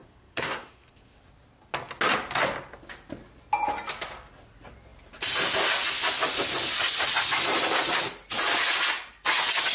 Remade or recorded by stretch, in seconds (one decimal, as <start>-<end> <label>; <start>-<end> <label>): 0.0-1.2 remade; 1.2-9.7 recorded